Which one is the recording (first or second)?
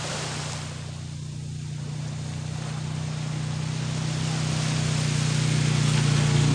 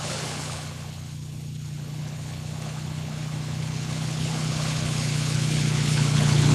first